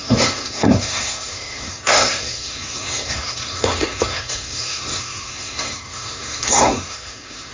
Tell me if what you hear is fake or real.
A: fake